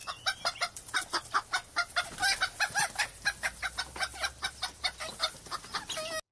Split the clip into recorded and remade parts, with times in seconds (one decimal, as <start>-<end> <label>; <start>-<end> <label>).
0.0-6.3 recorded